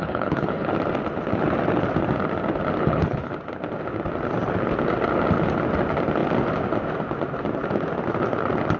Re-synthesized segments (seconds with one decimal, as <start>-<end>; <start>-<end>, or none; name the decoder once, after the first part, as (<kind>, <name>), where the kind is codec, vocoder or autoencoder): 0.0-0.7 (codec, HILCodec); 2.8-3.3

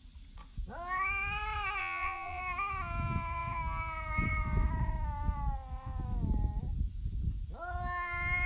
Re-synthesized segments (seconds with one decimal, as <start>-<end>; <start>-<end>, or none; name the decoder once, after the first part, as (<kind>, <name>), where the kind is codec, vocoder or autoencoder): 1.8-2.4 (vocoder, Vocos)

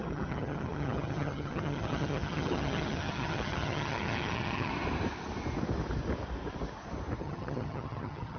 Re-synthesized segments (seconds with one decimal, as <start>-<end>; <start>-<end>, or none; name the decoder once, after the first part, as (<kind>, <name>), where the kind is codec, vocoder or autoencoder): 0.0-4.7 (vocoder, HiFi-GAN); 7.2-8.4

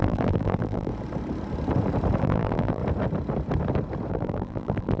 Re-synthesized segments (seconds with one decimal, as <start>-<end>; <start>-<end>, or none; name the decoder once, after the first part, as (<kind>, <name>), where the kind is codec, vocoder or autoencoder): 0.0-0.9 (vocoder, BigVGAN v2); 2.2-2.8; 4.1-5.0

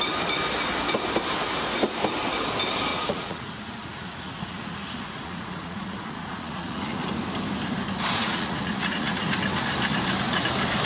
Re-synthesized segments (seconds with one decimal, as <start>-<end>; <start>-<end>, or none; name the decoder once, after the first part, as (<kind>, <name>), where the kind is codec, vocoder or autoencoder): 2.9-7.0 (vocoder, Vocos); 8.2-9.3

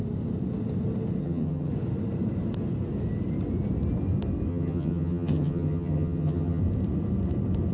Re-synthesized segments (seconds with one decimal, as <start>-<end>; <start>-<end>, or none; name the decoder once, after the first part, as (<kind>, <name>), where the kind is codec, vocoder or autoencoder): 1.2-1.7 (vocoder, HiFi-GAN); 4.5-6.6

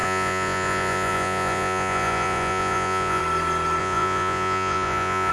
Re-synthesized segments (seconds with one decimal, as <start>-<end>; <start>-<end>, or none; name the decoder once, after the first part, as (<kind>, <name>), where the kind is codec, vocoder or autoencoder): 0.0-3.2 (vocoder, Vocos); 3.8-5.3

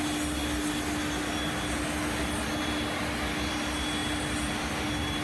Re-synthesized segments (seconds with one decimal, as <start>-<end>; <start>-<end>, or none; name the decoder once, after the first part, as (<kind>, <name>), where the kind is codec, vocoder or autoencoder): none